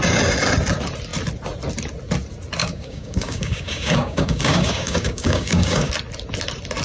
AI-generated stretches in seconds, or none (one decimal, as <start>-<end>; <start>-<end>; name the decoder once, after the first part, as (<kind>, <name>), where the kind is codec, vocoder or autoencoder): 2.6-5.9 (codec, DAC)

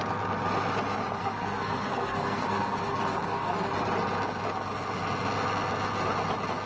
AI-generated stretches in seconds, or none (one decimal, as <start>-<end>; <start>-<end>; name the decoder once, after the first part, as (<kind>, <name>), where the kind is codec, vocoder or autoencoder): 1.2-3.7 (codec, SNAC)

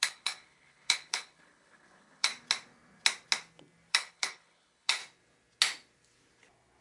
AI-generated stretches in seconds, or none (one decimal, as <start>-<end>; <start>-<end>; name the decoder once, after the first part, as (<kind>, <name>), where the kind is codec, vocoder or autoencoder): 0.0-2.3 (codec, HILCodec); 3.9-5.0

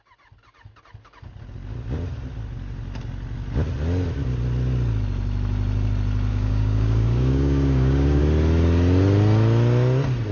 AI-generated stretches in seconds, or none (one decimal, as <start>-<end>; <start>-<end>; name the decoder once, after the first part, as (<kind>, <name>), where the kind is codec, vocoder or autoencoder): 6.3-8.2 (codec, DAC)

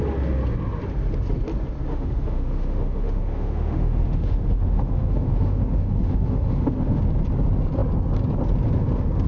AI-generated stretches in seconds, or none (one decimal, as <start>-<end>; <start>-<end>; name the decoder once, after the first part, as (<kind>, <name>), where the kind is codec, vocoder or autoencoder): 1.9-7.0 (autoencoder, DAC-VAE)

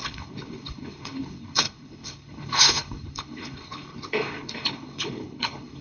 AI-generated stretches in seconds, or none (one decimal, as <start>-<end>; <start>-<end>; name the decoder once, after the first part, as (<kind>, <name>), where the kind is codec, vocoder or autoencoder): 0.0-5.8 (codec, HILCodec)